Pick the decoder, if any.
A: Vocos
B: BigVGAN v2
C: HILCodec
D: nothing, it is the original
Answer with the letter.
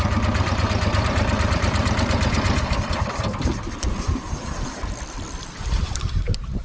B